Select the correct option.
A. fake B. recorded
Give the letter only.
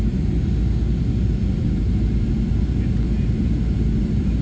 B